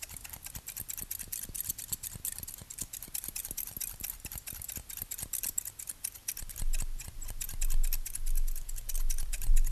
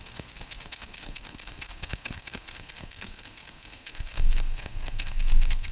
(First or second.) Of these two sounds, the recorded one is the first